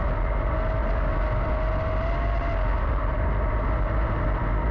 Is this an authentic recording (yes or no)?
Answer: yes